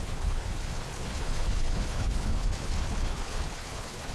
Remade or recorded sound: remade